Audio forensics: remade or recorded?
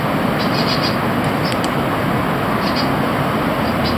recorded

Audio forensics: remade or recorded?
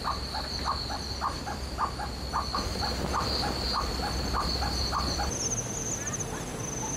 recorded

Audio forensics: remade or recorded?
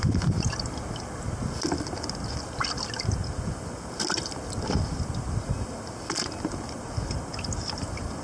recorded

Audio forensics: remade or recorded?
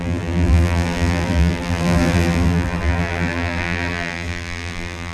remade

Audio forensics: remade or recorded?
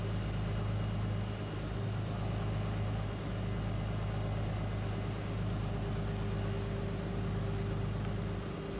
recorded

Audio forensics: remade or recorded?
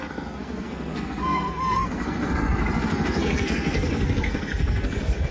remade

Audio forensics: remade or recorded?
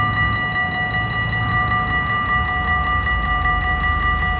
recorded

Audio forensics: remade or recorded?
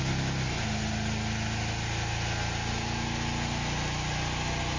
recorded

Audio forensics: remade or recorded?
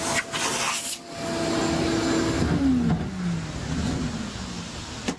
recorded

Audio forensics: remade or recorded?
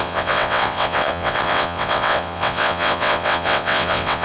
remade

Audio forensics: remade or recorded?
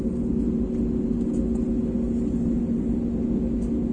recorded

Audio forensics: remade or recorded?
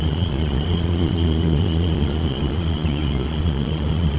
remade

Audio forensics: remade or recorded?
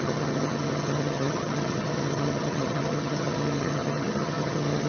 remade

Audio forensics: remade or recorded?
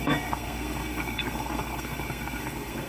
remade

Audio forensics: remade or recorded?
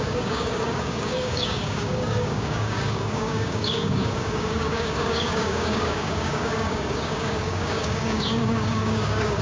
remade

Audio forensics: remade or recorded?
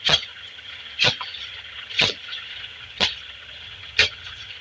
remade